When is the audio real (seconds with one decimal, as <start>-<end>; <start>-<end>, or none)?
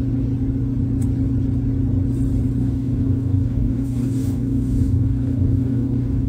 0.0-2.6